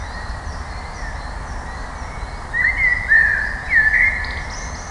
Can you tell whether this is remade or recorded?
recorded